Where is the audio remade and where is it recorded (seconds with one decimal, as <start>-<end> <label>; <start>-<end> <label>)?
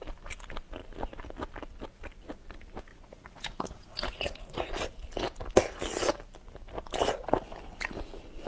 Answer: 0.0-2.9 recorded; 2.9-4.7 remade; 4.7-8.5 recorded